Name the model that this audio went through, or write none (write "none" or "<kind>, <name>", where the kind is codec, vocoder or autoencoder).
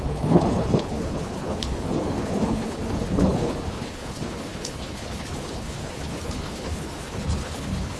codec, HILCodec